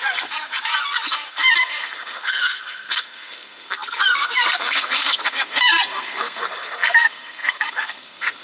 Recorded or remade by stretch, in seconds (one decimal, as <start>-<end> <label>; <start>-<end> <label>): 0.0-8.4 remade